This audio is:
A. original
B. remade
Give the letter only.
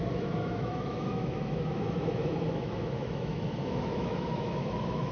B